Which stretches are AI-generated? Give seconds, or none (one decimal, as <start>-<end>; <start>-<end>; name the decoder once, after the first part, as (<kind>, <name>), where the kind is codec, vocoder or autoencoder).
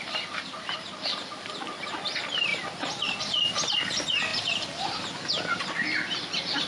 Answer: none